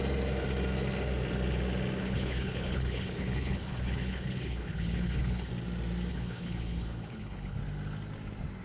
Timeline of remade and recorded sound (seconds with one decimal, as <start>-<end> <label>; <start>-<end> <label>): 0.0-2.0 recorded; 2.0-5.5 remade; 5.5-6.1 recorded; 6.1-7.6 remade; 7.6-8.6 recorded